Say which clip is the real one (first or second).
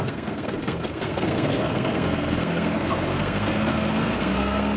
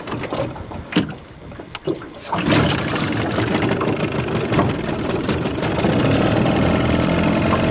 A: second